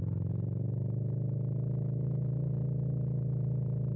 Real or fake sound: real